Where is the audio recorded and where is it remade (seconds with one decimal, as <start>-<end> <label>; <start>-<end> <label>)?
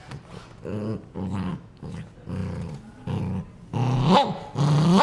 0.0-1.5 recorded; 1.5-2.0 remade; 2.0-5.0 recorded